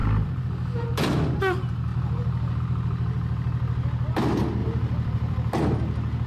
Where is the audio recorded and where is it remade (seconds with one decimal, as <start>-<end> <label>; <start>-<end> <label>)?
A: 0.0-4.6 recorded; 4.6-5.6 remade; 5.6-6.3 recorded